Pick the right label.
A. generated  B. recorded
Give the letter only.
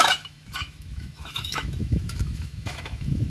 A